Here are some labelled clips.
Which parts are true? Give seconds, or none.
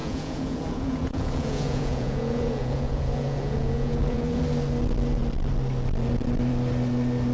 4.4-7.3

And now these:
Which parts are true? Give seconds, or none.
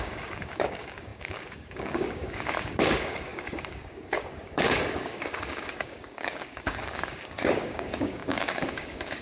none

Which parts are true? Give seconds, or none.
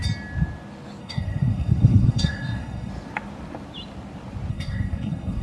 0.0-1.0; 2.9-4.5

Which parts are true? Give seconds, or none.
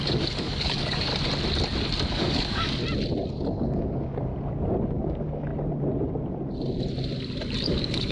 1.1-2.1; 2.8-3.3; 4.3-4.8; 5.5-7.6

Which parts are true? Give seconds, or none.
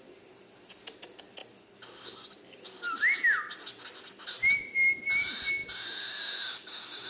0.0-7.1